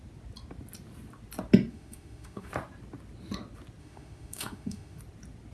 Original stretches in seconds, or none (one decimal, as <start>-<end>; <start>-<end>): 0.0-1.7; 2.5-3.8; 5.0-5.5